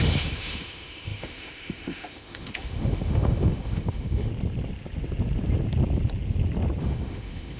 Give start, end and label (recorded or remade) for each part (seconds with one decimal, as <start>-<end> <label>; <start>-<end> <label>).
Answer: 0.0-4.3 remade; 4.3-6.8 recorded; 6.8-7.6 remade